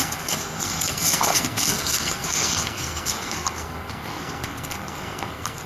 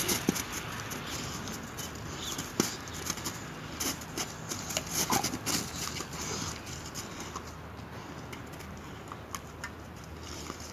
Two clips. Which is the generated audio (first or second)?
first